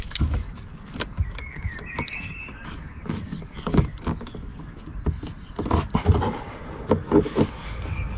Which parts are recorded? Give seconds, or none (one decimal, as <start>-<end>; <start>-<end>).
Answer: 4.9-6.9